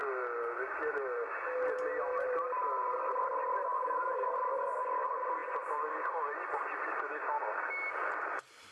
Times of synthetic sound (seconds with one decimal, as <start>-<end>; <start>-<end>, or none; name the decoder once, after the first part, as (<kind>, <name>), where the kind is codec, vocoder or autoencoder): 2.1-4.1 (vocoder, BigVGAN v2)